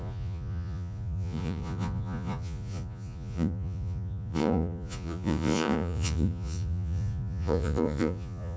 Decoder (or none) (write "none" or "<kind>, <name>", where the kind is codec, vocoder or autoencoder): vocoder, Vocos